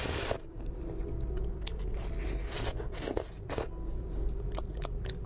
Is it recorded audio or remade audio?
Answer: recorded